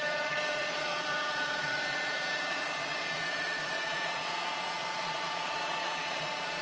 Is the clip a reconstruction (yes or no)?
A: yes